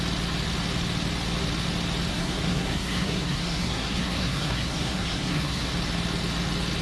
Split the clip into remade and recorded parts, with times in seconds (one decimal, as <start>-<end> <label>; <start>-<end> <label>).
0.0-2.1 recorded; 2.1-5.7 remade; 5.7-6.8 recorded